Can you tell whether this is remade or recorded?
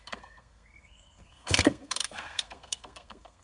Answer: remade